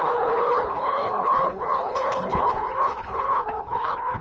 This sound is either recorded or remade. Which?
remade